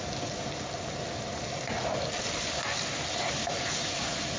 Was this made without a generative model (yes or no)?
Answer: yes